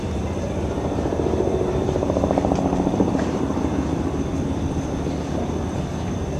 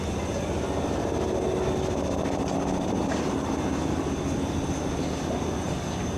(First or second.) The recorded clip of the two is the second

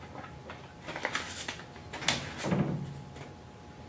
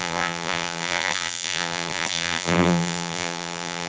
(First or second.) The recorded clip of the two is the first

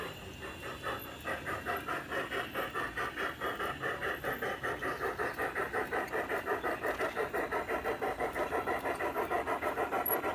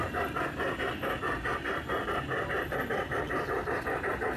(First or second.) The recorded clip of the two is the first